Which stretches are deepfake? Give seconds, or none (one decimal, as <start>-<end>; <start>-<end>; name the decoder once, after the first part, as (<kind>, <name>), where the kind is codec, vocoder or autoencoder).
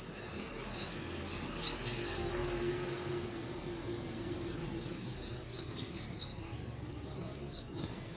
0.0-8.2 (codec, SNAC)